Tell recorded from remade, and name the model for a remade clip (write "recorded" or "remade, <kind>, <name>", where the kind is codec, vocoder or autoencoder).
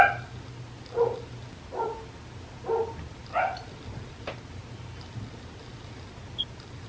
recorded